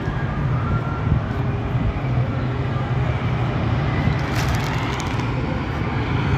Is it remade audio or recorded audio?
recorded